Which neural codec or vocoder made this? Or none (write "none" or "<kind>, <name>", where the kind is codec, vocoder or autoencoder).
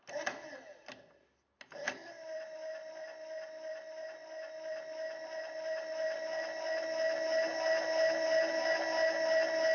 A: none